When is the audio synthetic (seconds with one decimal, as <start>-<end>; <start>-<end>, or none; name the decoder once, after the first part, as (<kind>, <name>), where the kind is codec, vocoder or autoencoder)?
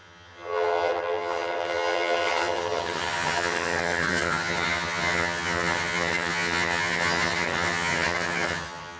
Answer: 0.0-9.0 (vocoder, HiFi-GAN)